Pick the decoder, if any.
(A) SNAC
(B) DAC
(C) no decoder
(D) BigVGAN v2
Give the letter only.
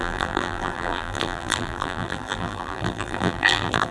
D